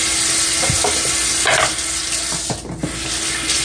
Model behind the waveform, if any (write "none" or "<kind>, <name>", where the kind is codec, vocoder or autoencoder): none